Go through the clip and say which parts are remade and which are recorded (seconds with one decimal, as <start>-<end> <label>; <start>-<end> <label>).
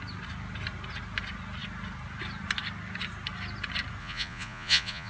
0.0-4.0 recorded; 4.0-5.1 remade